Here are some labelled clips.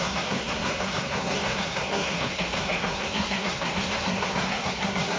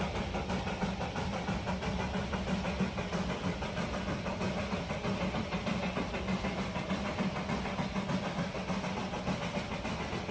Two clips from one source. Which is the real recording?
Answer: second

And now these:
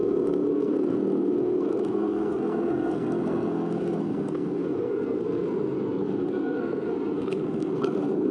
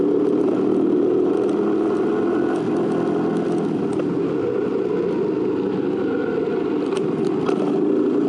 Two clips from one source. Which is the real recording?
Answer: second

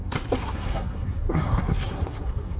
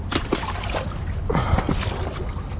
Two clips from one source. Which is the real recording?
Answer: second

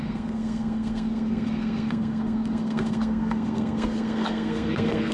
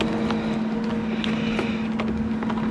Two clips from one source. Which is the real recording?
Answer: second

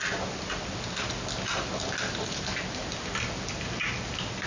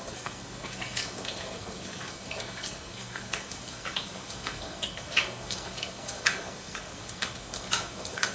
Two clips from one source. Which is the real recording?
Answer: first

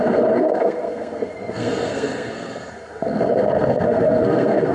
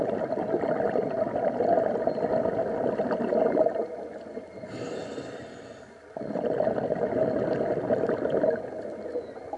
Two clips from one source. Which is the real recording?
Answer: second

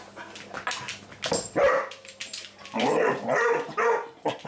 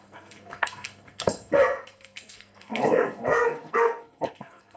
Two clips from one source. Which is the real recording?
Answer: first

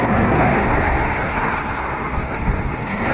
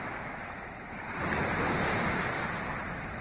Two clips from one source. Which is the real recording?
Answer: second